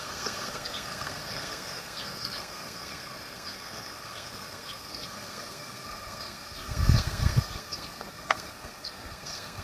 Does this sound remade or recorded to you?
remade